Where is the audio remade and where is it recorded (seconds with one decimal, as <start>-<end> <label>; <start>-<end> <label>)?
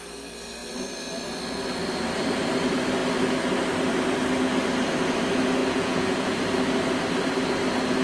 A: 0.0-5.6 recorded; 5.6-6.4 remade; 6.4-8.0 recorded